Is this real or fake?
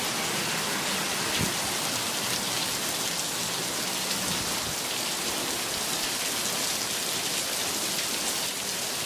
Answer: real